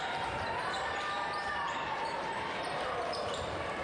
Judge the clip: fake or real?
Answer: fake